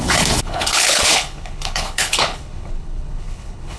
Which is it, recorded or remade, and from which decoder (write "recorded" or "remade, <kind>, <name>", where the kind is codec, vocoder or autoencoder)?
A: remade, codec, HILCodec